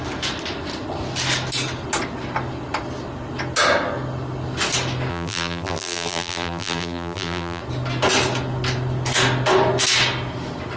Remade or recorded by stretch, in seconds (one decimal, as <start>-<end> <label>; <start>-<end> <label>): 0.0-5.1 recorded; 5.1-7.6 remade; 7.6-10.8 recorded